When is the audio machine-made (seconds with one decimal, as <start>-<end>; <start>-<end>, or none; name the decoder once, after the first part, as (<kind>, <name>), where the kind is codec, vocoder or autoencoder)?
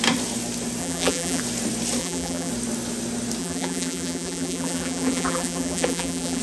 0.8-1.4 (vocoder, BigVGAN v2); 2.0-2.5; 3.4-6.4